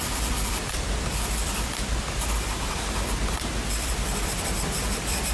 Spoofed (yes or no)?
yes